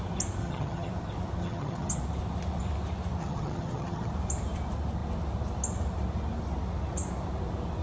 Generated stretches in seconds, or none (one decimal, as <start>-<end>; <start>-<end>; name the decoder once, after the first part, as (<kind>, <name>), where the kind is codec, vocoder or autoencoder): 0.4-0.9 (vocoder, HiFi-GAN); 1.4-2.0; 3.2-4.1